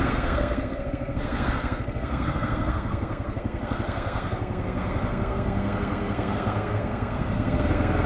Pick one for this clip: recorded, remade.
remade